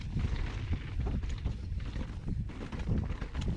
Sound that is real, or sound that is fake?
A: real